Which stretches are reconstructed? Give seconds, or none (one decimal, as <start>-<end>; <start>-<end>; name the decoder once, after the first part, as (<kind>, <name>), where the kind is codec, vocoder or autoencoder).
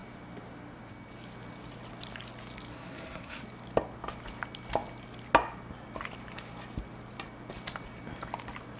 2.7-3.4 (codec, SNAC)